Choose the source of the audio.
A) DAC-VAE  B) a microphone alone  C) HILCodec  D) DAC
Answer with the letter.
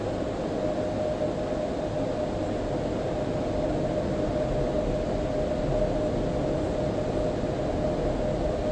B